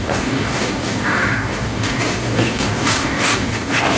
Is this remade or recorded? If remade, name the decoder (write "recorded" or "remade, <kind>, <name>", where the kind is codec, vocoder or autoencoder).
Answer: remade, codec, DAC